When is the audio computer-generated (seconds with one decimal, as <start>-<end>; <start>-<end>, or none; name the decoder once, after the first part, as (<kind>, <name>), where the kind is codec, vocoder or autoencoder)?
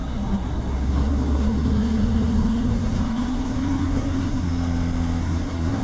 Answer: 0.0-4.5 (codec, SNAC); 5.2-5.8